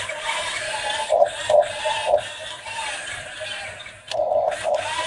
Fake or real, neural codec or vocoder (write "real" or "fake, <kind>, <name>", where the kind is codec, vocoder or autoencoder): fake, vocoder, BigVGAN v2